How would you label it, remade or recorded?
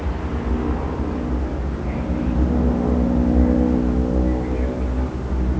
recorded